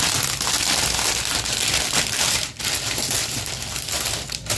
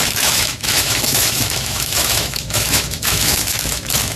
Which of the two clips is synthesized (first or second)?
second